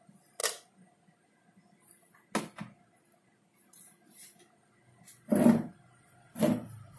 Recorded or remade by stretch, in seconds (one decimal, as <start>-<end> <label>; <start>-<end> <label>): 0.0-7.0 recorded